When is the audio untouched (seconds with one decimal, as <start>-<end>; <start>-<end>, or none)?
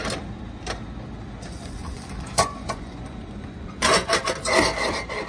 0.0-1.6; 4.1-5.3